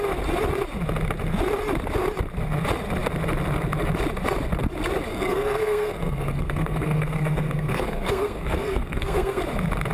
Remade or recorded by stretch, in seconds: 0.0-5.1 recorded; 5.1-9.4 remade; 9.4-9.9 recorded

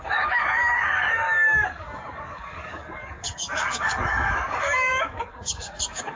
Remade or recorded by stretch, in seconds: 0.0-6.2 remade

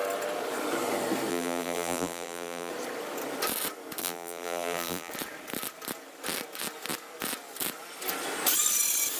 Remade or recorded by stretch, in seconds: 0.0-1.3 recorded; 1.3-2.7 remade; 2.7-4.0 recorded; 4.0-5.1 remade; 5.1-9.2 recorded

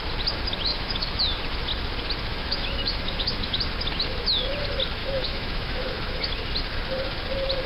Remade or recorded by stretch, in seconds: 0.0-0.7 recorded; 0.7-1.2 remade; 1.2-2.3 recorded; 2.3-3.6 remade; 3.6-5.0 recorded; 5.0-6.3 remade; 6.3-7.7 recorded

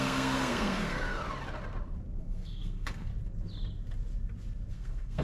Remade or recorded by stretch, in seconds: 0.0-1.2 remade; 1.2-2.2 recorded; 2.2-3.1 remade; 3.1-4.7 recorded; 4.7-5.2 remade

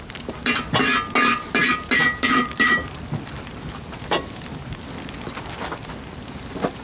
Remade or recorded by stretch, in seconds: 0.0-6.8 recorded

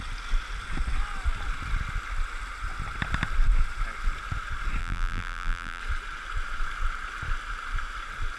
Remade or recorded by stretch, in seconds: 0.0-4.8 recorded; 4.8-5.8 remade; 5.8-8.4 recorded